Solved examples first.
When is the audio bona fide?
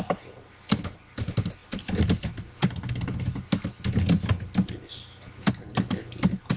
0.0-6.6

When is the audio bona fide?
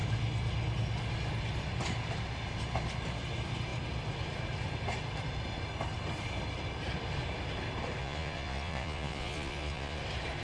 0.0-8.0; 10.0-10.4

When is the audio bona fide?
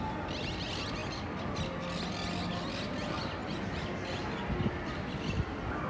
0.0-5.9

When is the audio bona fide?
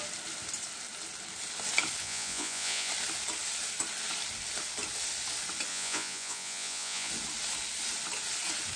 0.0-2.0; 2.9-5.7; 7.1-8.8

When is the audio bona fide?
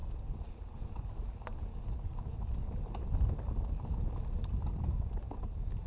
0.0-5.9